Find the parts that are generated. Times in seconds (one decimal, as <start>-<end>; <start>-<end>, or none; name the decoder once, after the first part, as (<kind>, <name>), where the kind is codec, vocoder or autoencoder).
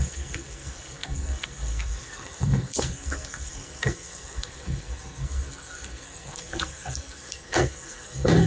0.0-8.5 (codec, SNAC)